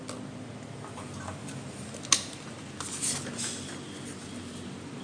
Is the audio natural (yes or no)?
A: yes